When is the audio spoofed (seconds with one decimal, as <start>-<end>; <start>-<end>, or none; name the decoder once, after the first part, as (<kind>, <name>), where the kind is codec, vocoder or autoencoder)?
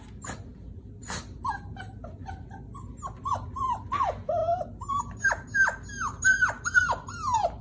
none